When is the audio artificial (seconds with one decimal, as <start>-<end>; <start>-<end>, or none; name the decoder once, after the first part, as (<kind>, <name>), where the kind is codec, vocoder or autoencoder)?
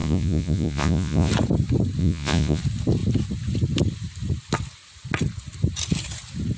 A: 0.0-1.3 (vocoder, Vocos); 2.0-2.6